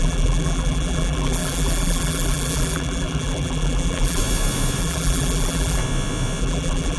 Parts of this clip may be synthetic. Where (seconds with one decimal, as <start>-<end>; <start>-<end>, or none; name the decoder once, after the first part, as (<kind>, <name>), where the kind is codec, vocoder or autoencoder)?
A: 0.0-4.2 (vocoder, BigVGAN v2); 4.8-5.8; 6.4-7.0